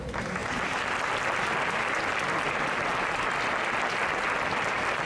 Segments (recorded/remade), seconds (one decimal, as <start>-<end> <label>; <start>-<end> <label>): 0.0-5.1 recorded